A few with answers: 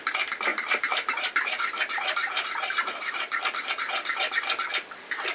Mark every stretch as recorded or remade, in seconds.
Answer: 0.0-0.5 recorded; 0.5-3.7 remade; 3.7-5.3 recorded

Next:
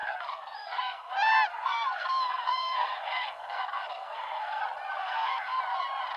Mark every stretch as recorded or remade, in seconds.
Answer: 0.0-1.1 remade; 1.1-1.5 recorded; 1.5-4.6 remade; 4.6-5.0 recorded; 5.0-5.6 remade; 5.6-6.2 recorded

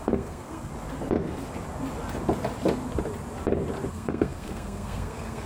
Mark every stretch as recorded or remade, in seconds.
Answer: 0.0-0.7 remade; 0.7-3.9 recorded; 3.9-5.5 remade

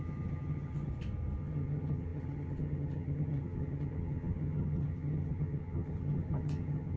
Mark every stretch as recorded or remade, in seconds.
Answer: 0.0-0.9 remade; 0.9-1.4 recorded; 1.4-7.0 remade

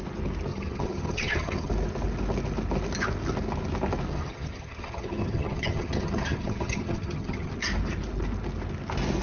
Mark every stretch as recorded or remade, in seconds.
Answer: 0.0-0.5 recorded; 0.5-1.7 remade; 1.7-4.1 recorded; 4.1-7.5 remade; 7.5-9.2 recorded

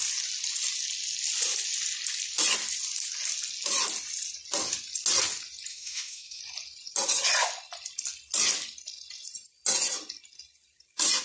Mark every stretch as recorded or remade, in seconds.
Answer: 0.0-5.7 recorded; 5.7-6.4 remade; 6.4-11.2 recorded